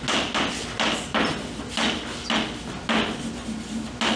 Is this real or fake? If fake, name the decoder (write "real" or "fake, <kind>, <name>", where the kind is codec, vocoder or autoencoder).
real